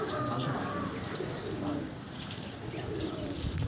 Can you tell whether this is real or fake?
real